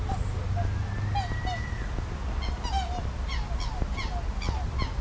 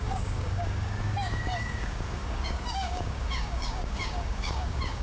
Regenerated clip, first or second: second